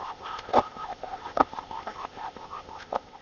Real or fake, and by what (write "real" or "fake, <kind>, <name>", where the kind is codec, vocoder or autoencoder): fake, codec, ZipCodec